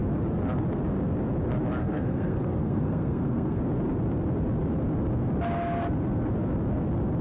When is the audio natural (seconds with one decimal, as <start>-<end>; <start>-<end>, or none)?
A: 0.0-1.8; 3.6-7.2